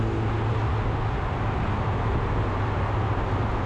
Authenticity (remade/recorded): recorded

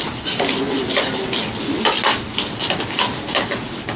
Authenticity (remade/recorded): recorded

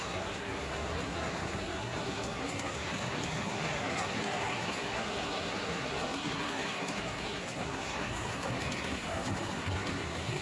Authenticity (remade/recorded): remade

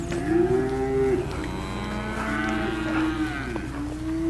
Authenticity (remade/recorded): recorded